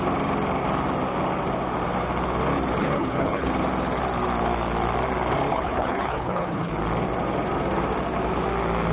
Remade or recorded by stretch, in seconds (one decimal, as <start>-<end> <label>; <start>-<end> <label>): 0.0-2.8 recorded; 2.8-3.5 remade; 3.5-5.5 recorded; 5.5-6.7 remade; 6.7-8.9 recorded